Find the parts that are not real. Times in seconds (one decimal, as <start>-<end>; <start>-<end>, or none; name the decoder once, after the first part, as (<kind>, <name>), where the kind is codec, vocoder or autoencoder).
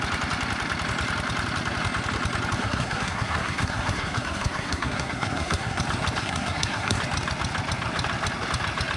2.6-5.8 (codec, SNAC); 6.2-7.0